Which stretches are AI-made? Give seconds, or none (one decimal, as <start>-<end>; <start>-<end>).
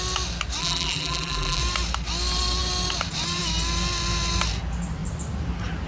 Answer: 0.6-1.6